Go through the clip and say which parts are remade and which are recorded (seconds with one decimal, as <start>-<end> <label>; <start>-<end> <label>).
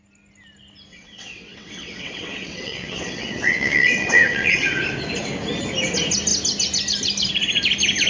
0.0-0.9 recorded; 0.9-4.8 remade; 4.8-8.1 recorded